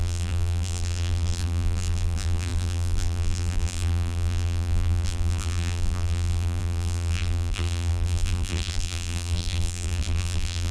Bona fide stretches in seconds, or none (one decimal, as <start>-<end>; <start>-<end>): none